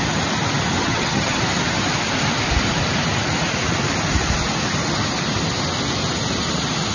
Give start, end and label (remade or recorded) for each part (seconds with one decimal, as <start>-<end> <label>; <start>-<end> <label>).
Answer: 0.0-0.8 recorded; 0.8-1.4 remade; 1.4-6.9 recorded